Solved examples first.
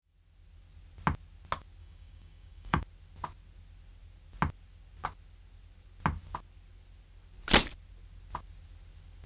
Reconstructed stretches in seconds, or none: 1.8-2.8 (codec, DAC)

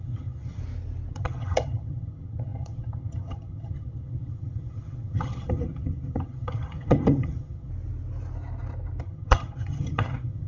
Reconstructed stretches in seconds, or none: 0.0-0.6 (vocoder, HiFi-GAN); 1.1-7.7; 9.0-10.5